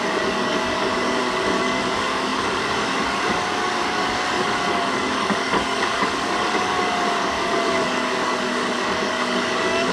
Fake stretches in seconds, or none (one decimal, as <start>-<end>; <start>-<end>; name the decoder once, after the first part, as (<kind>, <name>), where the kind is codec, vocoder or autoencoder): 0.0-9.9 (codec, DAC)